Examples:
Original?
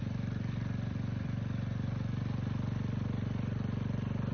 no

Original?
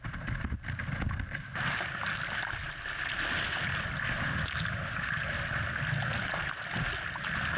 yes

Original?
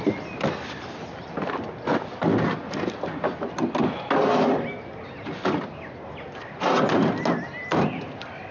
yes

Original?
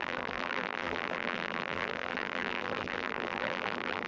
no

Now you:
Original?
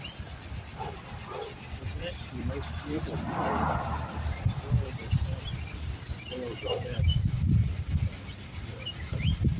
no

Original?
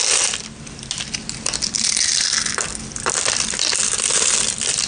yes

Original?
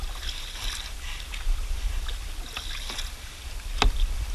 yes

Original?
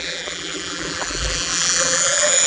no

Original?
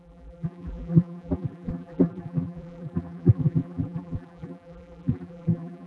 no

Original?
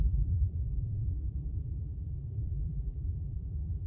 no